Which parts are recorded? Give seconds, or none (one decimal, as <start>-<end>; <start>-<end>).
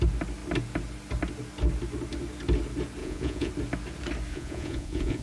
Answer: 0.0-3.0; 3.5-4.3